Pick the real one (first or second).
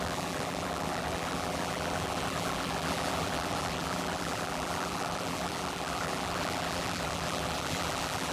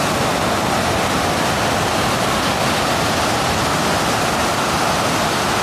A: second